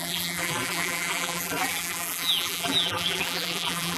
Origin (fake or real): fake